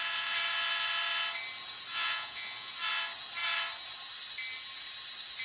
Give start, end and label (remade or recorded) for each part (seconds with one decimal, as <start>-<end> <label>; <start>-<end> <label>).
0.0-1.9 recorded; 1.9-2.7 remade; 2.7-5.4 recorded